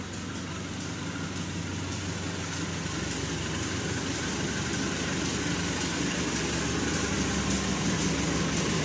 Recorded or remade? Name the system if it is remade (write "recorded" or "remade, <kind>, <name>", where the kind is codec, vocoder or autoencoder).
recorded